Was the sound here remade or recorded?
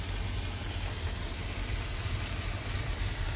remade